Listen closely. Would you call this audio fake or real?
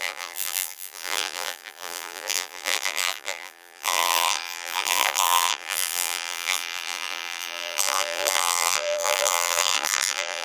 fake